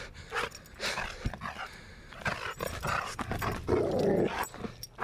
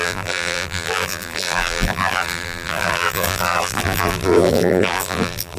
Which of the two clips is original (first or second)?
first